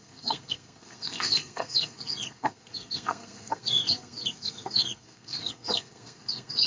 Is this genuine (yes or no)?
no